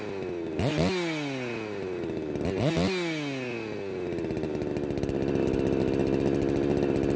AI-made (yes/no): no